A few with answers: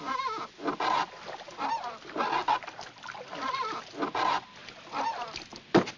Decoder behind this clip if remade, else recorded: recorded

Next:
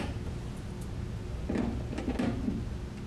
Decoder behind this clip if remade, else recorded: recorded